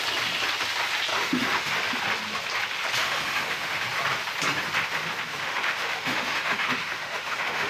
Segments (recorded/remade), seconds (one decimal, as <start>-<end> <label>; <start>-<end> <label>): 0.0-1.1 recorded; 1.1-1.7 remade; 1.7-3.0 recorded; 3.0-3.8 remade; 3.8-5.3 recorded; 5.3-7.7 remade